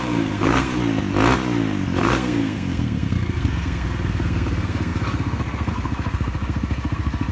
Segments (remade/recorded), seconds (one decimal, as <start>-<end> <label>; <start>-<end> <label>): 0.0-0.8 remade; 0.8-2.0 recorded; 2.0-7.3 remade